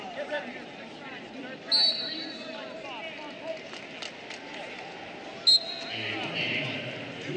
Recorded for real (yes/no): yes